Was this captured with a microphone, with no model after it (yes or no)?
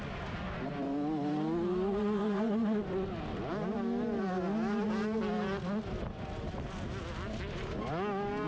yes